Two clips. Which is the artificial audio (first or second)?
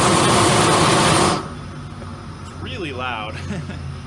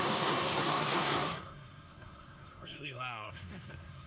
second